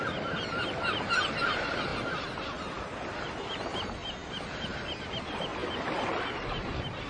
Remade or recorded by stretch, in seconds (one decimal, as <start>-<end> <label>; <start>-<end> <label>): 0.0-1.9 remade; 1.9-3.2 recorded; 3.2-4.0 remade; 4.0-5.1 recorded; 5.1-5.5 remade; 5.5-6.2 recorded; 6.2-7.1 remade